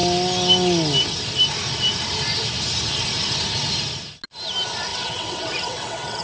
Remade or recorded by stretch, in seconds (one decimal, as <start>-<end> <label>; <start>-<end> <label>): 0.0-4.9 recorded; 4.9-6.2 remade